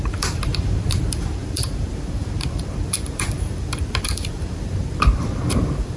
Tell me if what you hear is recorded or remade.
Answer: remade